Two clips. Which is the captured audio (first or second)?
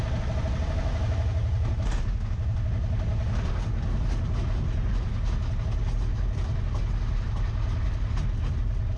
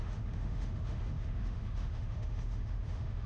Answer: first